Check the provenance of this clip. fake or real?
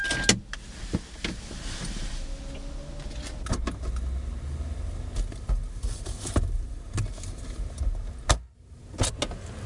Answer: real